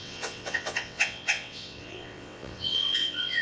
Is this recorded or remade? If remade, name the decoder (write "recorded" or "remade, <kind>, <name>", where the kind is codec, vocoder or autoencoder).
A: remade, vocoder, WaveNeXt